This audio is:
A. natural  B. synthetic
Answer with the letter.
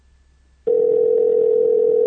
A